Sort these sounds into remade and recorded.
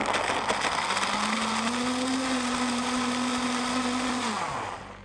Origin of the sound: recorded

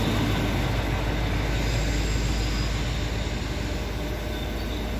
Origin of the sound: recorded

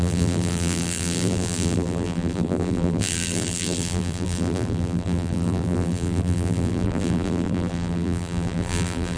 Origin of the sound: remade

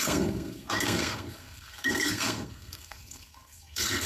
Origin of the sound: remade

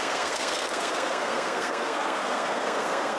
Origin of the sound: remade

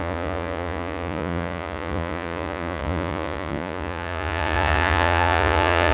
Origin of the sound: remade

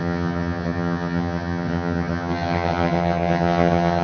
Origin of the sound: remade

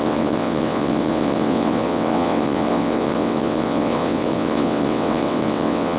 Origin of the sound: remade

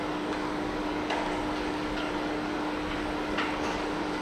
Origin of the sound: remade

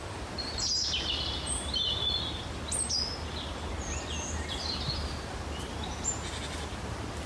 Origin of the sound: recorded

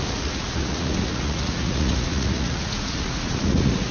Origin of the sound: remade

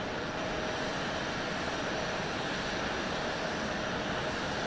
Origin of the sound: recorded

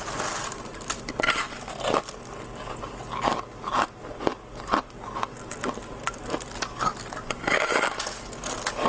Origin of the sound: recorded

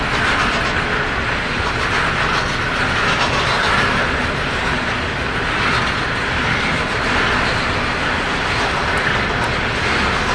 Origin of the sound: recorded